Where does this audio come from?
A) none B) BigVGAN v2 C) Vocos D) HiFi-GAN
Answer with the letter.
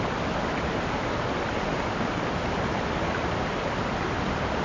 A